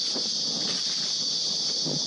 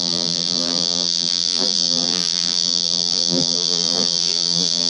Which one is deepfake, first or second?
second